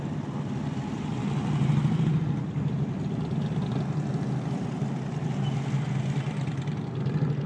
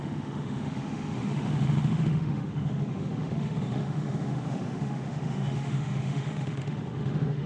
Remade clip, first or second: second